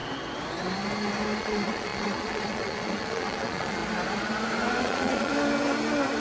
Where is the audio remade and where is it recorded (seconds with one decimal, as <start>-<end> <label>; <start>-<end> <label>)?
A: 0.0-1.4 recorded; 1.4-3.8 remade; 3.8-4.8 recorded; 4.8-5.3 remade; 5.3-6.2 recorded